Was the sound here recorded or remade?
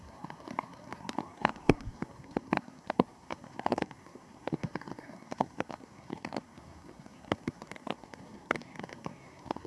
remade